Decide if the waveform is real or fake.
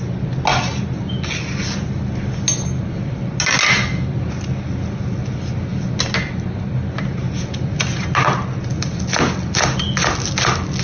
real